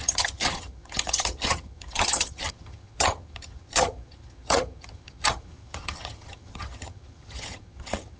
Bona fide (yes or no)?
no